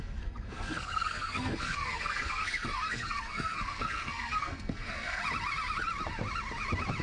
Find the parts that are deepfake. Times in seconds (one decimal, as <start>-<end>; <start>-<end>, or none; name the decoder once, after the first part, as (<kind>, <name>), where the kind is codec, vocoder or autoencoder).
0.0-5.2 (codec, SNAC)